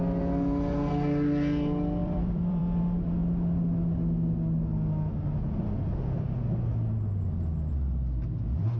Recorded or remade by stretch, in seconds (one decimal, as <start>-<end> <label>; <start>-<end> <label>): 0.0-2.0 recorded; 2.0-2.8 remade; 2.8-8.8 recorded